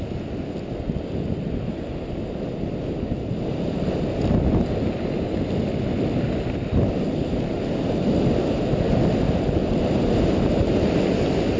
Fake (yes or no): no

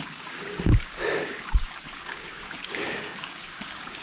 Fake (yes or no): yes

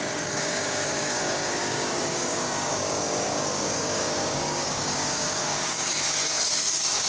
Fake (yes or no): yes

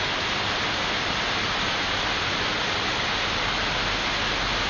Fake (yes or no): no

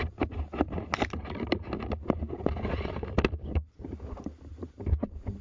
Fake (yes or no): no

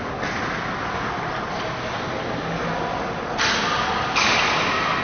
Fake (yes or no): no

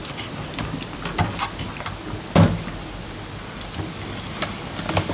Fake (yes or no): no